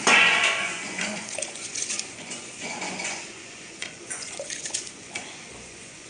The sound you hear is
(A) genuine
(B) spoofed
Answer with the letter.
B